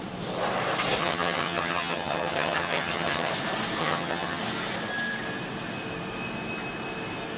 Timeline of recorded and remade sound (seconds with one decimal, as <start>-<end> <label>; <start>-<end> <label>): 0.0-1.0 recorded; 1.0-3.3 remade; 3.3-3.8 recorded; 3.8-4.4 remade; 4.4-7.4 recorded